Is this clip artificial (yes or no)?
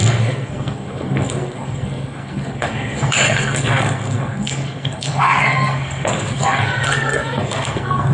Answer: yes